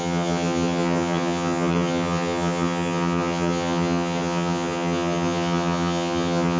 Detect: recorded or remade remade